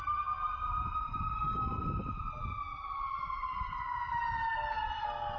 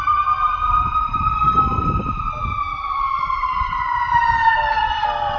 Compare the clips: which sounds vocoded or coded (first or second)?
second